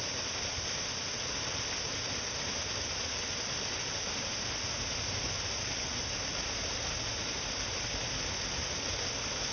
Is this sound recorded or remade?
recorded